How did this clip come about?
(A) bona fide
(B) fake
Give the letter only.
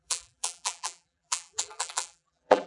B